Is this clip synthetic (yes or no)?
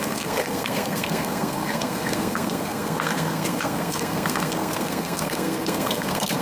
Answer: yes